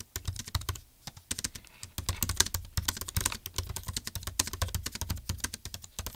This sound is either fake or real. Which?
real